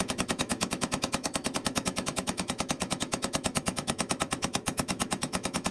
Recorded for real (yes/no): no